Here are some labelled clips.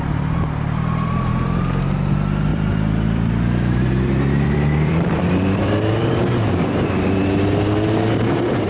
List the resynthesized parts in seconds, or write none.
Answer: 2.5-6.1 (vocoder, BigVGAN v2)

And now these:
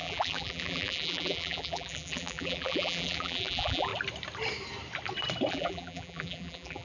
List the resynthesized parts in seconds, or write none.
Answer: 0.0-3.9 (vocoder, BigVGAN v2); 5.5-6.8

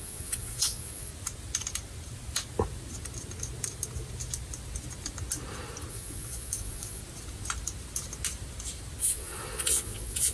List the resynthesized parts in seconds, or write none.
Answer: 0.0-1.1 (vocoder, Vocos); 5.9-7.0; 9.0-10.3

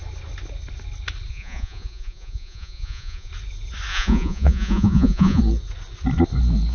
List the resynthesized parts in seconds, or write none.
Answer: 1.3-3.3 (vocoder, Vocos); 3.9-5.4

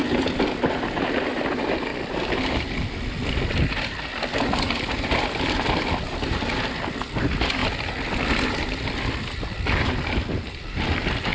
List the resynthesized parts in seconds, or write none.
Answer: none